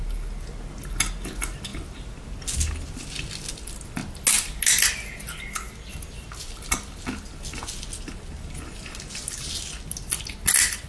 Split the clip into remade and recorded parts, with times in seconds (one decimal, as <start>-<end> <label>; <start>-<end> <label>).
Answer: 0.0-10.9 recorded